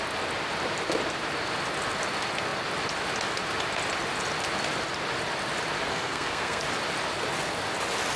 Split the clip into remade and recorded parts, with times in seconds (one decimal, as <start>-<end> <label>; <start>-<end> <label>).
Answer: 0.0-5.9 recorded; 5.9-6.6 remade; 6.6-8.2 recorded